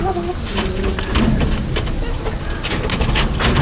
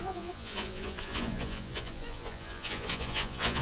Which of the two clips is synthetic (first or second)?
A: second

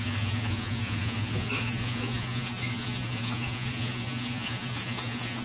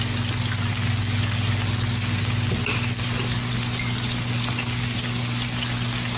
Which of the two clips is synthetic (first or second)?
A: first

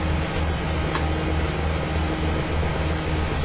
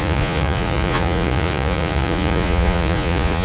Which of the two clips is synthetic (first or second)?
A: second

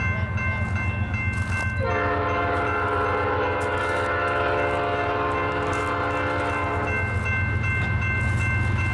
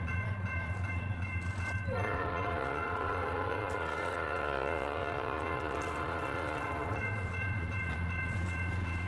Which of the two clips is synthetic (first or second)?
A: second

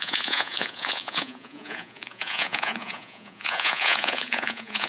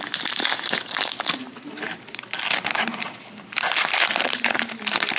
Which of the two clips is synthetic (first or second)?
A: first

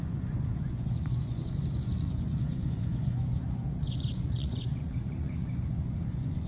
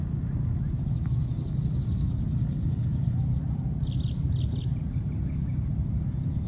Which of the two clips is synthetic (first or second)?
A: first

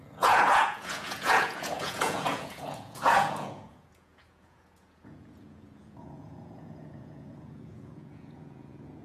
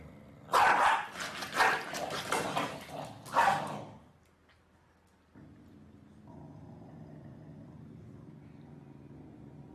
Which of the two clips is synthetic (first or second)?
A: first